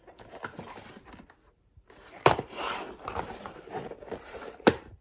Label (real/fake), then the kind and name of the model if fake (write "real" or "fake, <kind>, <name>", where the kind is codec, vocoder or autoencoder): fake, vocoder, BigVGAN v2